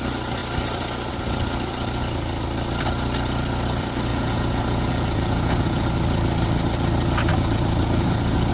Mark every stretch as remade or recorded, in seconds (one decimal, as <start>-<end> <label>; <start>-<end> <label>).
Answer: 0.0-4.1 recorded; 4.1-5.9 remade; 5.9-7.3 recorded; 7.3-8.5 remade